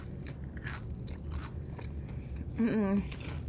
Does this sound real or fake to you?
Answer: real